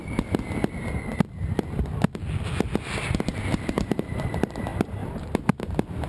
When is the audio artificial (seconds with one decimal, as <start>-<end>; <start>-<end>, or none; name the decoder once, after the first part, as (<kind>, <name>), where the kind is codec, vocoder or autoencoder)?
3.7-6.1 (vocoder, BigVGAN v2)